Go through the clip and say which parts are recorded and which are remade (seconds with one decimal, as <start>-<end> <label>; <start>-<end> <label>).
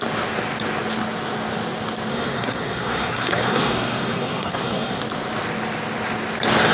0.0-2.1 recorded; 2.1-5.0 remade; 5.0-6.7 recorded